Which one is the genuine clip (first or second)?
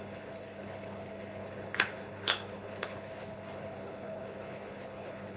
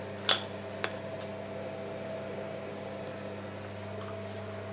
second